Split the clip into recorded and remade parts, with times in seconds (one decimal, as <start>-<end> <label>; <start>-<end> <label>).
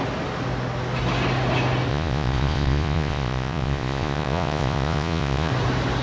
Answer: 0.0-1.9 recorded; 1.9-5.5 remade; 5.5-6.0 recorded